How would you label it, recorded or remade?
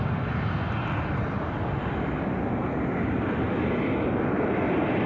recorded